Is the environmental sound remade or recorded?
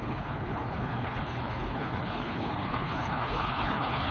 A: remade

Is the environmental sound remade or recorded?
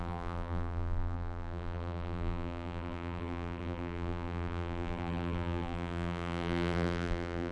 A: remade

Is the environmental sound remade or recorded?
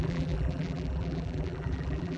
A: remade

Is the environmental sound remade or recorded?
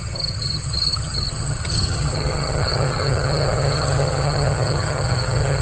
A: remade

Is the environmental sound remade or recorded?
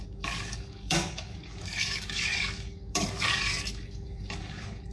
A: remade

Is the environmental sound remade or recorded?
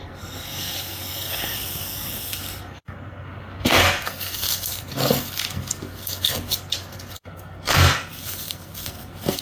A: remade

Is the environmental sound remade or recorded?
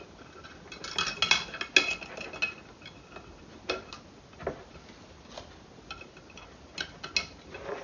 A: recorded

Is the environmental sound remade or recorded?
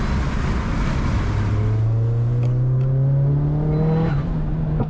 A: recorded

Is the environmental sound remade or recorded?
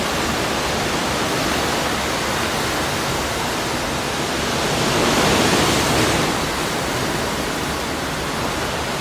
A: recorded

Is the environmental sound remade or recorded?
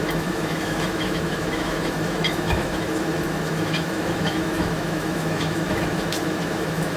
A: remade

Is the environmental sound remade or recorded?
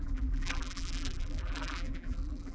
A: remade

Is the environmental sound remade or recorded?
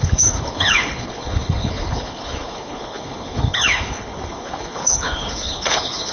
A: remade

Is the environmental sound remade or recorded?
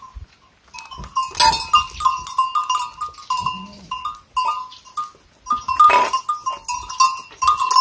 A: recorded